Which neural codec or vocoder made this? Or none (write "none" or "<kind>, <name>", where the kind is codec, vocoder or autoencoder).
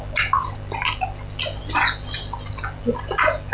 none